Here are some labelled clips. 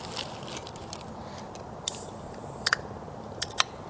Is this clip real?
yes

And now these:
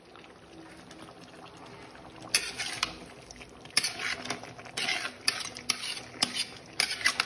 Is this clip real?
yes